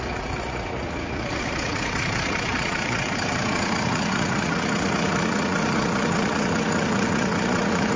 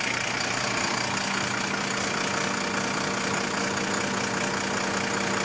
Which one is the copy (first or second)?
first